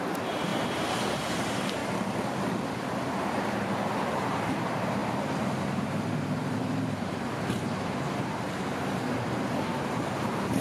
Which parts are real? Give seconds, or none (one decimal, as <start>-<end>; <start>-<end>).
1.8-4.1

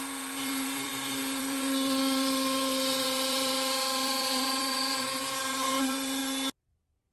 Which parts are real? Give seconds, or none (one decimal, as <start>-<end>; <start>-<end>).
6.2-7.1

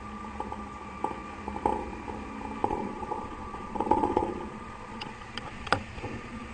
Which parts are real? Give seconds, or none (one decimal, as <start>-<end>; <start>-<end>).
0.0-2.6

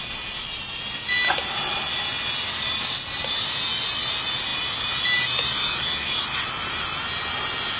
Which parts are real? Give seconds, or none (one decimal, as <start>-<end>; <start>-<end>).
0.0-7.8

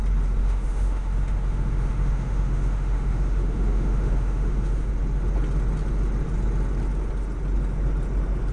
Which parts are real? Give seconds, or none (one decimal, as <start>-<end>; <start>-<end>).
0.0-0.4; 4.9-8.5

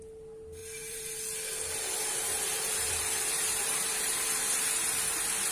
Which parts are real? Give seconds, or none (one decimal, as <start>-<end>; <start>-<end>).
0.0-0.6; 1.1-2.0

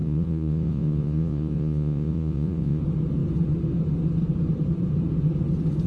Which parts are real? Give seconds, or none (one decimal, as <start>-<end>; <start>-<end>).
2.8-5.9

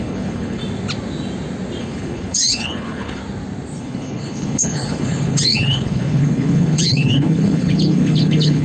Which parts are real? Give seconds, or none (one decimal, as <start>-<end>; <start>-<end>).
0.6-1.8; 3.2-3.8